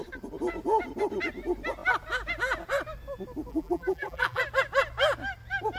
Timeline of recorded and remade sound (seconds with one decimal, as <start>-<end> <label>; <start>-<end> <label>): 0.0-3.5 recorded; 3.5-4.4 remade; 4.4-5.8 recorded

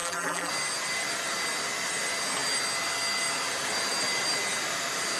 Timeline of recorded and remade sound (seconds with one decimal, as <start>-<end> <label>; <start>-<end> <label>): 0.0-0.5 remade; 0.5-5.2 recorded

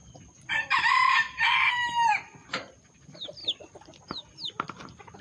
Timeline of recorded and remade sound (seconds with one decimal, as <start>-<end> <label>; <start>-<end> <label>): 0.0-0.7 recorded; 0.7-3.4 remade; 3.4-4.8 recorded; 4.8-5.2 remade

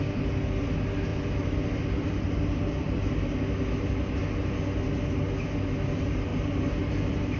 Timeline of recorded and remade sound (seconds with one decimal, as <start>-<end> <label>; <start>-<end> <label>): 0.0-1.1 recorded; 1.1-3.1 remade; 3.1-7.4 recorded

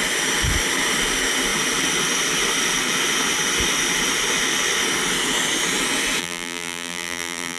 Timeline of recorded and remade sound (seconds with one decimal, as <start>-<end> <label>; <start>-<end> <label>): 0.0-6.2 recorded; 6.2-7.6 remade

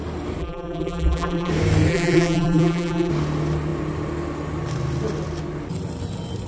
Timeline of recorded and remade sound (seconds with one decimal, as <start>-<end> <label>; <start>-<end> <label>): 0.0-0.4 recorded; 0.4-1.5 remade; 1.5-1.9 recorded; 1.9-3.1 remade; 3.1-6.5 recorded

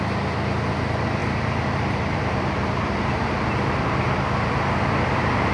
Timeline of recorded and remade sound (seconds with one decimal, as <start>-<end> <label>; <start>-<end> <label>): 0.0-5.5 recorded

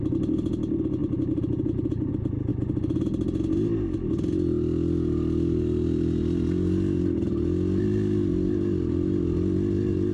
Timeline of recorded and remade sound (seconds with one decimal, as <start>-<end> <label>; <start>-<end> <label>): 0.0-1.0 recorded; 1.0-2.1 remade; 2.1-10.1 recorded